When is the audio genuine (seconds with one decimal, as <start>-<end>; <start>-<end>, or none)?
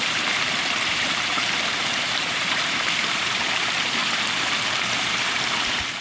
none